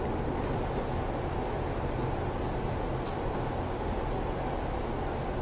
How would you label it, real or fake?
real